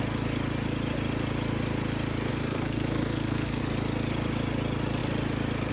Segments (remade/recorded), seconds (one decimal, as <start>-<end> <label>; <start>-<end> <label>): 0.0-2.3 recorded; 2.3-3.6 remade; 3.6-5.7 recorded